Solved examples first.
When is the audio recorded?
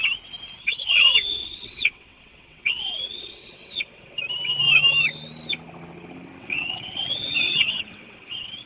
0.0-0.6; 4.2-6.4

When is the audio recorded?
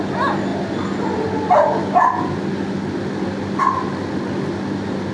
0.0-5.1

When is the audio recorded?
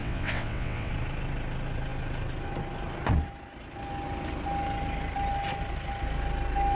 0.9-6.7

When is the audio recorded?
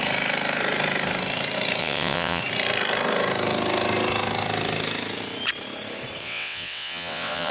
0.0-1.8; 2.4-6.2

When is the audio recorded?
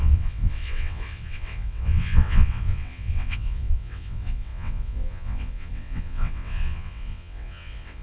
none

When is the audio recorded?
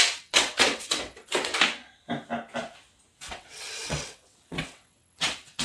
1.5-3.2